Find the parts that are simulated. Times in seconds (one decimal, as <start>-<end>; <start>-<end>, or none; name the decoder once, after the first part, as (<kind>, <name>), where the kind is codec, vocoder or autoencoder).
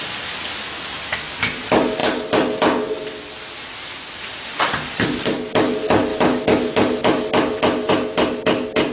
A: none